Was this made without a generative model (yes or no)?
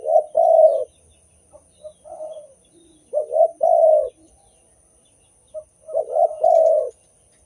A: yes